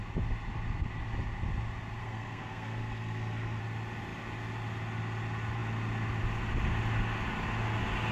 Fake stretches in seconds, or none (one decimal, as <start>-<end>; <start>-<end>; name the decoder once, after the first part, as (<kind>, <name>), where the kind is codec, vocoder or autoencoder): 2.0-3.6 (codec, SNAC)

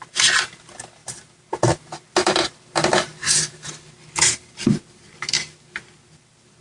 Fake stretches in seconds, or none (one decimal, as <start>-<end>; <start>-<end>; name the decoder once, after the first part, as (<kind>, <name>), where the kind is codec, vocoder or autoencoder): none

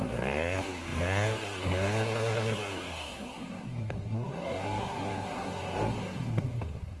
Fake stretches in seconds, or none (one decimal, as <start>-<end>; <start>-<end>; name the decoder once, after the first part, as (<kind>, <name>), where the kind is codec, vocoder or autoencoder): 0.0-7.0 (codec, SNAC)

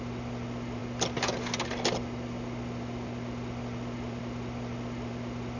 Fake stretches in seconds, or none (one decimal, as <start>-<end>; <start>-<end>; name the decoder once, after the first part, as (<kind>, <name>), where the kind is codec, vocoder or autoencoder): none

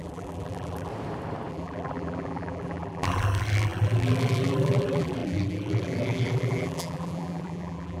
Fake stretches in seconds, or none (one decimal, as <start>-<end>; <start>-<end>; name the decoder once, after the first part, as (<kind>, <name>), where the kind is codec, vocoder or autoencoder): 0.0-0.9 (vocoder, BigVGAN v2); 1.5-8.0

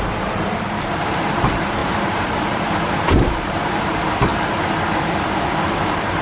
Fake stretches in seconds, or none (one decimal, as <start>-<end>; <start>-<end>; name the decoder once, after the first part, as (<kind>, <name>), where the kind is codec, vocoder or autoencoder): 0.0-4.3 (vocoder, BigVGAN v2); 5.0-6.2